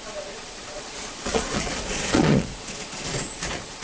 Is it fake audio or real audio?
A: fake